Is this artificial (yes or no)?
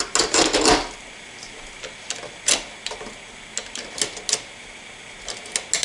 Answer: no